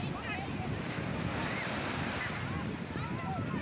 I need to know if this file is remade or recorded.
recorded